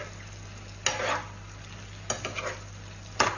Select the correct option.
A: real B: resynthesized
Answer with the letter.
A